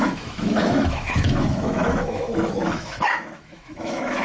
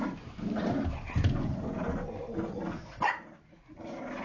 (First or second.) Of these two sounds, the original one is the second